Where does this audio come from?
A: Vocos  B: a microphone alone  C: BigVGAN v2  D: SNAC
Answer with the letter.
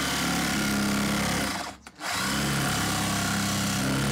B